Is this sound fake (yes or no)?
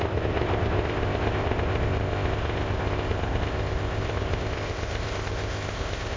yes